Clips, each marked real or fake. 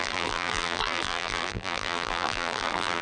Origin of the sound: fake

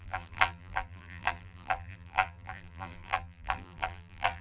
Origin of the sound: fake